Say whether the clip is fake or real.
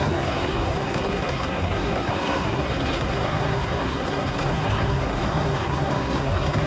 fake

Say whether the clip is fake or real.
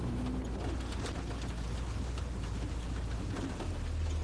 real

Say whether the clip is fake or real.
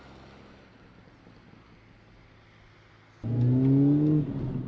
real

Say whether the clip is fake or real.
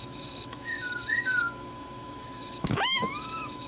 fake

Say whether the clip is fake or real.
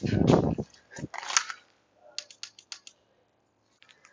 real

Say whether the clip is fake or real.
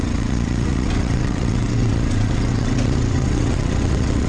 fake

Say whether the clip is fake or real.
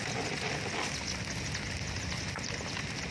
real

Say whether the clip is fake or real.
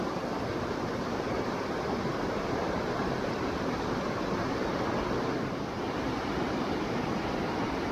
fake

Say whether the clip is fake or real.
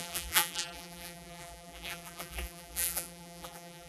fake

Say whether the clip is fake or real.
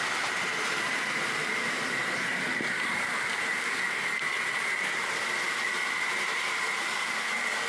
fake